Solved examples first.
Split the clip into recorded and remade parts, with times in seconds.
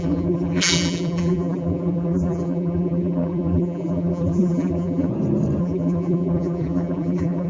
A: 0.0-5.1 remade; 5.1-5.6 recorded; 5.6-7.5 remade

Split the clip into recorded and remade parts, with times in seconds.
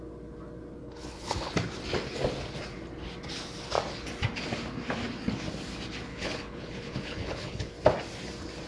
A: 0.0-0.8 recorded; 0.8-1.5 remade; 1.5-6.1 recorded; 6.1-7.7 remade; 7.7-8.7 recorded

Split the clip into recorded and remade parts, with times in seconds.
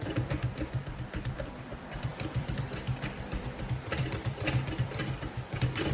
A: 0.0-5.9 remade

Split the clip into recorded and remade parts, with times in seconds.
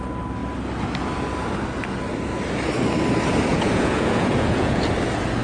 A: 0.0-3.5 recorded; 3.5-4.9 remade; 4.9-5.4 recorded